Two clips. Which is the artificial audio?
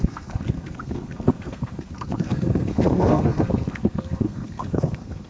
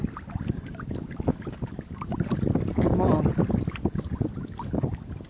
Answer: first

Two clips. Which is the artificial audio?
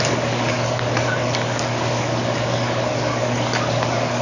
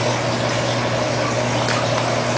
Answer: first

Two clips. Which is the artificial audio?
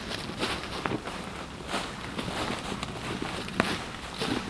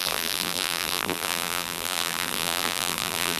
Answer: second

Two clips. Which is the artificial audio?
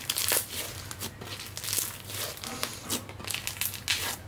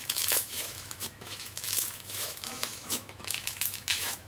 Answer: second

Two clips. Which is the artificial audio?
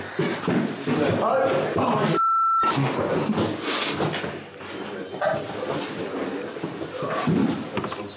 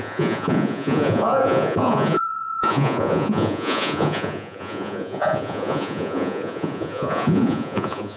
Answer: second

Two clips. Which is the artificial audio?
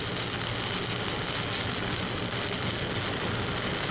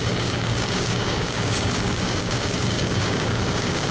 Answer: second